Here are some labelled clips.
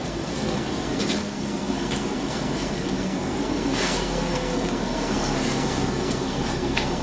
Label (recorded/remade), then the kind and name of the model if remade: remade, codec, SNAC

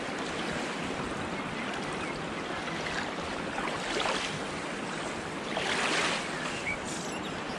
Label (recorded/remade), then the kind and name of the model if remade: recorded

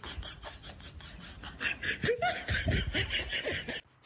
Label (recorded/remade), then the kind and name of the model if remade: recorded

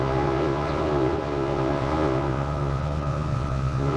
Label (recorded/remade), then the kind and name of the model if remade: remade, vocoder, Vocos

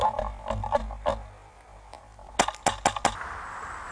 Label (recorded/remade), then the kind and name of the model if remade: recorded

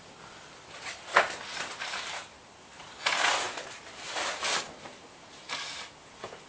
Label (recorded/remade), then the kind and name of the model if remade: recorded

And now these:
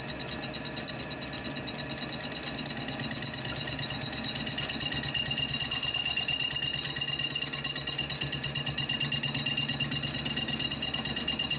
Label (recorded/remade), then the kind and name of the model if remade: recorded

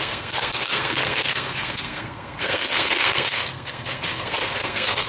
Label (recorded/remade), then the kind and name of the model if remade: remade, codec, SNAC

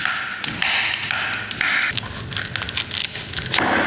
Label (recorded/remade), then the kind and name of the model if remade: recorded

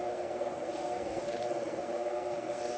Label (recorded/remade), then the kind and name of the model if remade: remade, codec, SNAC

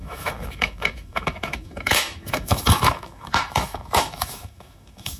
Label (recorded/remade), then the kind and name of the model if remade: remade, autoencoder, DAC-VAE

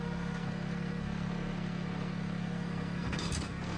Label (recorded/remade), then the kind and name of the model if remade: remade, codec, SNAC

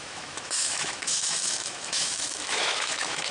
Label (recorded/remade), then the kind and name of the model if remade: remade, autoencoder, DAC-VAE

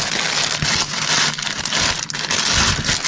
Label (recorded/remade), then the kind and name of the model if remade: recorded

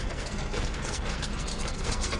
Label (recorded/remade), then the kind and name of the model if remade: remade, codec, SNAC